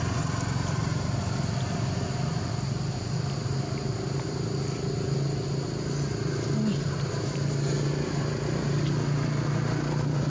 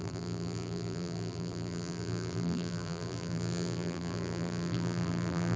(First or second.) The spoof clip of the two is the second